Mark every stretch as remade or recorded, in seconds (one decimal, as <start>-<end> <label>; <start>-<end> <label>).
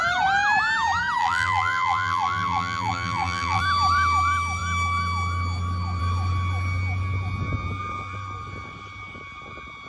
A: 0.0-1.2 recorded; 1.2-3.6 remade; 3.6-9.9 recorded